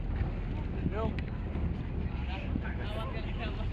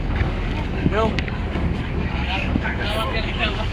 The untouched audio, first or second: first